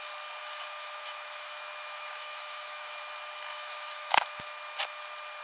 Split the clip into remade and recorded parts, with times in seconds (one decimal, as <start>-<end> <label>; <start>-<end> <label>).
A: 0.0-0.4 recorded; 0.4-3.0 remade; 3.0-3.5 recorded; 3.5-4.5 remade; 4.5-5.4 recorded